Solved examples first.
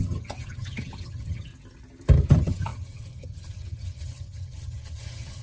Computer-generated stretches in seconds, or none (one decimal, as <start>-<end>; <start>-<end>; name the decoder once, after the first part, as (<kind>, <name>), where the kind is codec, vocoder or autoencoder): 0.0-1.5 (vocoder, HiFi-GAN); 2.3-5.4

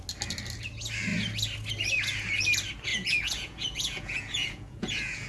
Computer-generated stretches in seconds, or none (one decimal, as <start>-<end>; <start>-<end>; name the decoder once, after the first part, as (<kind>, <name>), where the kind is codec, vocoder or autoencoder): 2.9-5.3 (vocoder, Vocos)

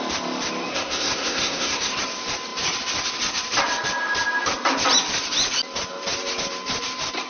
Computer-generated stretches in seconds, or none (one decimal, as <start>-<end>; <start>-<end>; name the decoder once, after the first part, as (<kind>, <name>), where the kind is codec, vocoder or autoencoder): 0.7-1.9 (codec, SNAC)

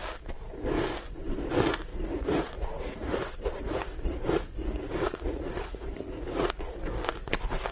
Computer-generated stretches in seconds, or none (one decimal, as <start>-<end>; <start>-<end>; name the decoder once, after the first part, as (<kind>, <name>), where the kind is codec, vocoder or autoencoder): 1.9-6.5 (vocoder, Vocos)

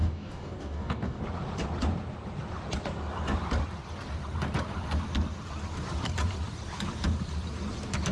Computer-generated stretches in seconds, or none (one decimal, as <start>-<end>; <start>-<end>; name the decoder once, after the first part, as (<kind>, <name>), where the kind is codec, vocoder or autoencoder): 0.0-1.2 (codec, DAC)